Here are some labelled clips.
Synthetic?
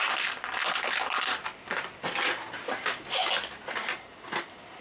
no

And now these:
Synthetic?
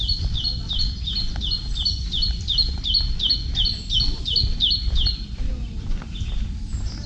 no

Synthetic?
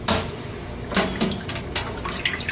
no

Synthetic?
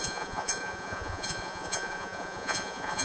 yes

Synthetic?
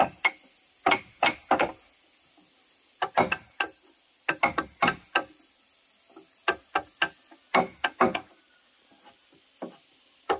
no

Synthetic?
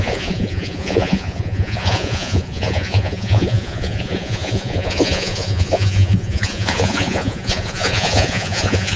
yes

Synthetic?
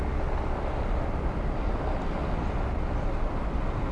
no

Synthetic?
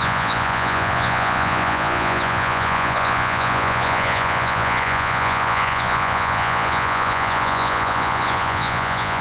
yes